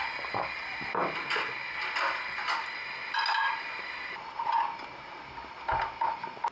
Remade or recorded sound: recorded